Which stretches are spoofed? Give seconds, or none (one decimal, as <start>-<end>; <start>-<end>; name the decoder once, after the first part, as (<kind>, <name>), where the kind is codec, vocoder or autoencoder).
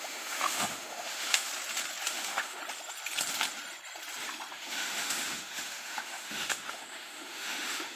0.0-1.5 (autoencoder, DAC-VAE); 2.1-2.6; 4.5-8.0